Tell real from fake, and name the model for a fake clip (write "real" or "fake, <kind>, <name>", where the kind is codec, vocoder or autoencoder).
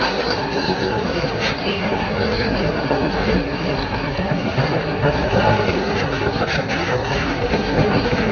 fake, codec, SNAC